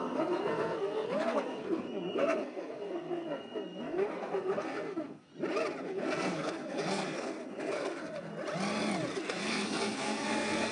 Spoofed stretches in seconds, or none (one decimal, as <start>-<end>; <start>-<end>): 0.0-5.3; 5.8-8.3; 9.2-10.7